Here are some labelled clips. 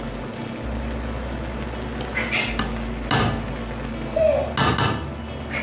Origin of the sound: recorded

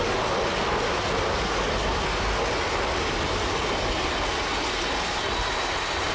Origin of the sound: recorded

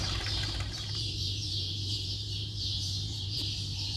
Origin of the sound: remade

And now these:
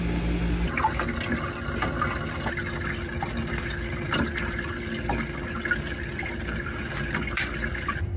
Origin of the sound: recorded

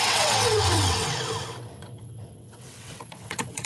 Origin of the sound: remade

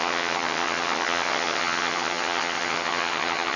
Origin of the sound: remade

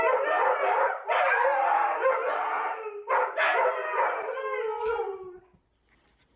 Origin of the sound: recorded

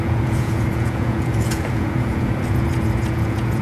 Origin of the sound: remade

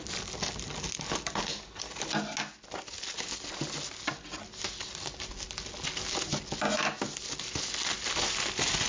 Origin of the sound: recorded